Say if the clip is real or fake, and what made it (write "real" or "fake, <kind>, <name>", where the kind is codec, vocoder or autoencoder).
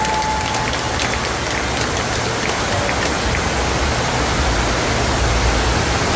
real